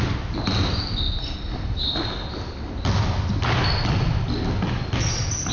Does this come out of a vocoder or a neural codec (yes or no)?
no